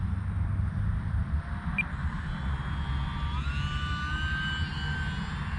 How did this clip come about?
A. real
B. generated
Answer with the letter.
A